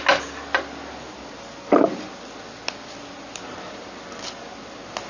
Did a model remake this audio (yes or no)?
no